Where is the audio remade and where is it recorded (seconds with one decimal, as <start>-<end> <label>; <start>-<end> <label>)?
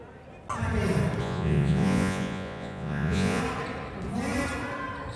0.0-1.2 recorded; 1.2-3.4 remade; 3.4-5.2 recorded